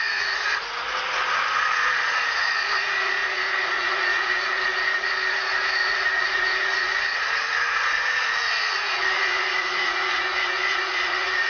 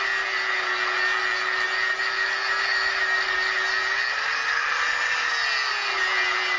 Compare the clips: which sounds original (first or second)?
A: second